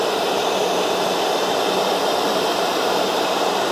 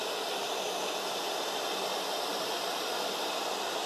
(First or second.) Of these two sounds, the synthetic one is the first